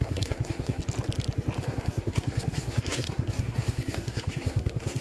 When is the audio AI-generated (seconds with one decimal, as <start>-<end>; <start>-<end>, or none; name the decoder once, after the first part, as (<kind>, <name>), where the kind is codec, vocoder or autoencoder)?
0.0-0.8 (codec, SNAC); 1.6-5.0